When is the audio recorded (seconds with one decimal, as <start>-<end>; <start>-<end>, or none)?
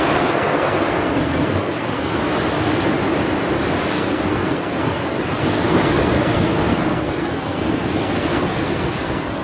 2.2-3.9